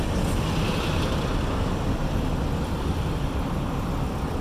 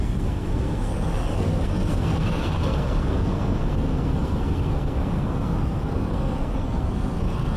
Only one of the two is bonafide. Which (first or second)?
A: first